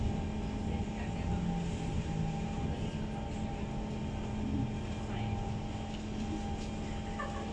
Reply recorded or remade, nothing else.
recorded